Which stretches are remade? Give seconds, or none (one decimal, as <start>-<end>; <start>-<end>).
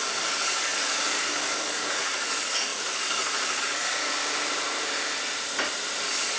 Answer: 0.0-4.2; 6.0-6.4